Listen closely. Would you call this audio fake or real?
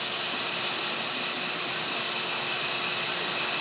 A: real